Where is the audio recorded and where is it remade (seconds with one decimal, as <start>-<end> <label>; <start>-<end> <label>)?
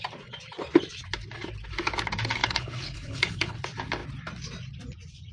0.0-2.4 recorded; 2.4-3.6 remade; 3.6-5.3 recorded